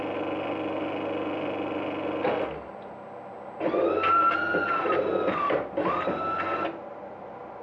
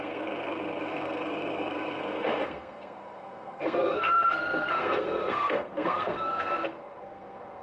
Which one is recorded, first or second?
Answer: first